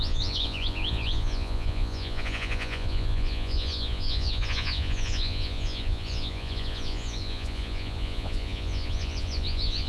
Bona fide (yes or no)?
no